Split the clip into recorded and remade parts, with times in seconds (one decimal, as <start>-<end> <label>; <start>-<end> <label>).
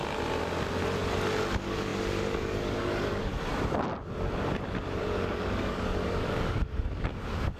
0.0-1.4 recorded; 1.4-3.3 remade; 3.3-5.0 recorded; 5.0-7.6 remade